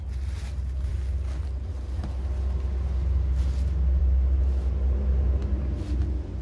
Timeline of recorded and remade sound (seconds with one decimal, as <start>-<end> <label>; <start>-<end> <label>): 0.0-6.4 recorded